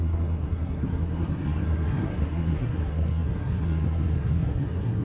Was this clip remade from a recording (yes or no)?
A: yes